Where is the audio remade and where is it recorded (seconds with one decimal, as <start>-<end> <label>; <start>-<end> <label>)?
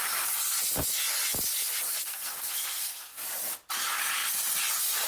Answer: 0.0-1.9 recorded; 1.9-3.2 remade; 3.2-5.1 recorded